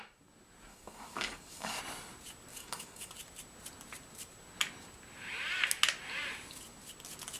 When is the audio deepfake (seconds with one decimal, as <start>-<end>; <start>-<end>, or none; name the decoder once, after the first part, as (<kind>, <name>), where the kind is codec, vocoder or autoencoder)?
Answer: 0.7-1.8 (codec, DAC); 2.5-3.1